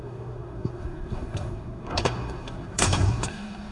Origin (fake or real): fake